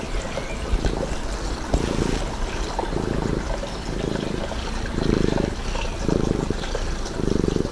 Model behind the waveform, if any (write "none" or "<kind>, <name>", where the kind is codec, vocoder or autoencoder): none